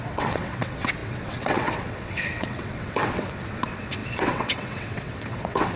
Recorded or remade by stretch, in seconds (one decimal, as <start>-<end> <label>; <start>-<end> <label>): 0.0-5.8 remade